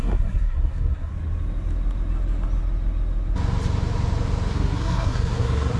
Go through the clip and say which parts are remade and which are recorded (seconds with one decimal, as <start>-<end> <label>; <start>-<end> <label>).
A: 0.0-1.1 remade; 1.1-4.5 recorded; 4.5-5.8 remade